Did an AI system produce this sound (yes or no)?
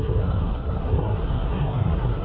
yes